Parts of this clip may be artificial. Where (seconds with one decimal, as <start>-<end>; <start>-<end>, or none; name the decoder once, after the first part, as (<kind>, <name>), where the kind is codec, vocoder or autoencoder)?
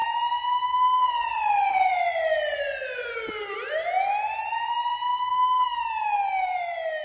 none